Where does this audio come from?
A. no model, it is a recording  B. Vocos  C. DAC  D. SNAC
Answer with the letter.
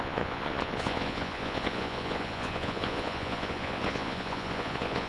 B